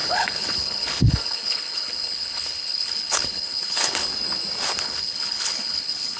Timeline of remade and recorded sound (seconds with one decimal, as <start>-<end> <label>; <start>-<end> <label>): 0.0-4.0 remade; 4.0-4.8 recorded; 4.8-6.2 remade